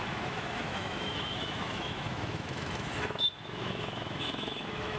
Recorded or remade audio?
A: remade